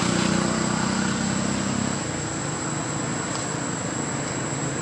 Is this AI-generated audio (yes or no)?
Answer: no